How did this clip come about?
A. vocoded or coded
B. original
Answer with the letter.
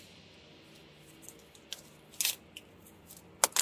B